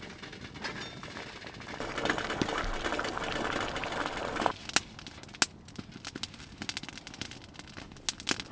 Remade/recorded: recorded